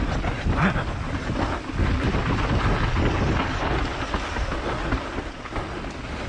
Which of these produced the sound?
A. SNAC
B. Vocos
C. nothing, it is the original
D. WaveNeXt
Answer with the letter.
C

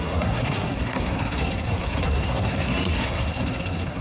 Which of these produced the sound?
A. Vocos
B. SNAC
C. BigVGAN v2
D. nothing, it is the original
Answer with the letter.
B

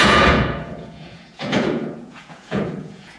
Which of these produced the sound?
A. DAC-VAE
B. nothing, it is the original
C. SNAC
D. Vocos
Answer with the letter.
D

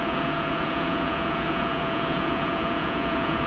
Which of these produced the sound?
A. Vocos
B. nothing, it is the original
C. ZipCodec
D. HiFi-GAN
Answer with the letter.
A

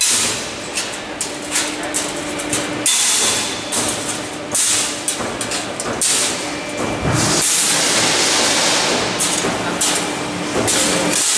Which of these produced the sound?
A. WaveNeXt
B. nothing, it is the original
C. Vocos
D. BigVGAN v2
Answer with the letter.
B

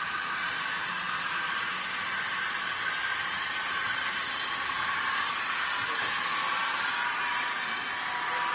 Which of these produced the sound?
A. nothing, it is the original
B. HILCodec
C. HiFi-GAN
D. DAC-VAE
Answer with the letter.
A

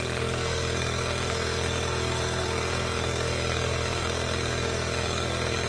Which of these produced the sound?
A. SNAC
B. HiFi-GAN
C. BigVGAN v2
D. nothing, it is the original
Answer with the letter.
A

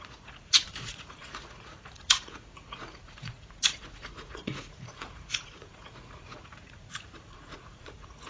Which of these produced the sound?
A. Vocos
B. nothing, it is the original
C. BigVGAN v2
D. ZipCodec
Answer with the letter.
A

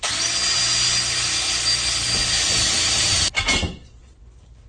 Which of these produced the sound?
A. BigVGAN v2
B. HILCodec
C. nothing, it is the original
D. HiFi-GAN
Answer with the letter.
C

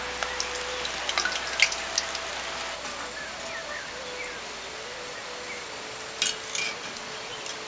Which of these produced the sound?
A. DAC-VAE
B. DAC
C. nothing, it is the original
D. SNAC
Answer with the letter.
C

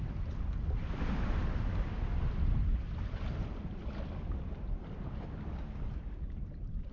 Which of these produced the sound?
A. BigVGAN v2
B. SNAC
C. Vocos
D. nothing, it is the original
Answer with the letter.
D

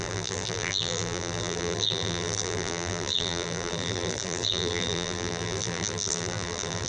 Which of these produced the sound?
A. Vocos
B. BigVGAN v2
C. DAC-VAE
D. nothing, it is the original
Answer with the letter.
B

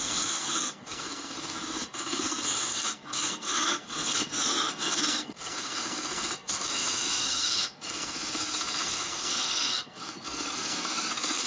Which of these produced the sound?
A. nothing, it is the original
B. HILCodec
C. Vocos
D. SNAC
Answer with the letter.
D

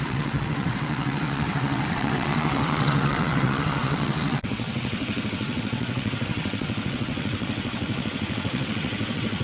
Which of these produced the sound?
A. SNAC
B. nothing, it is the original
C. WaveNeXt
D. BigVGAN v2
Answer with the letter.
C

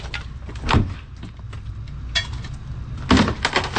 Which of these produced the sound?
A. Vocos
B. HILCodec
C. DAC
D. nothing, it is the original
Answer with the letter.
D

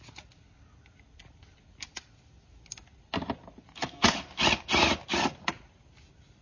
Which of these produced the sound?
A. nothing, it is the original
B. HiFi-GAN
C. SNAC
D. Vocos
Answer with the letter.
A